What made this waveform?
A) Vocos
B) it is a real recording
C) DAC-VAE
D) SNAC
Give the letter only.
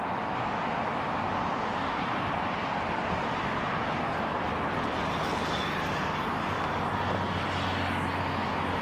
B